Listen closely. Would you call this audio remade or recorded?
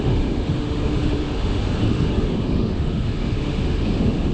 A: remade